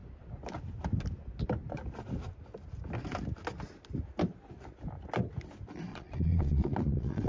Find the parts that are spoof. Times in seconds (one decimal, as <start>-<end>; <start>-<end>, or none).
5.9-7.3